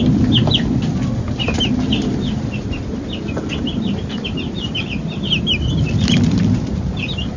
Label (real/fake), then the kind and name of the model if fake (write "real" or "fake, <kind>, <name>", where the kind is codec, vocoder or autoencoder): fake, vocoder, BigVGAN v2